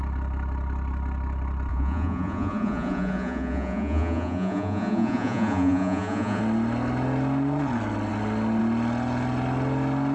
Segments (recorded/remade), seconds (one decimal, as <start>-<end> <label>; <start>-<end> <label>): 0.0-1.7 recorded; 1.7-6.4 remade; 6.4-10.1 recorded